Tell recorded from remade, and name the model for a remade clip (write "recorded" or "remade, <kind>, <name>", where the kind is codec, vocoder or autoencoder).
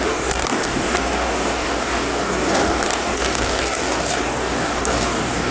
remade, codec, DAC